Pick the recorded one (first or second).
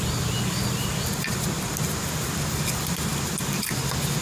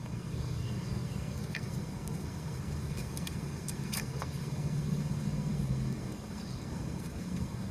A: first